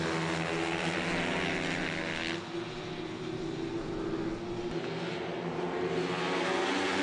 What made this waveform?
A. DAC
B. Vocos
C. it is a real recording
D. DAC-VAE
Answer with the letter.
C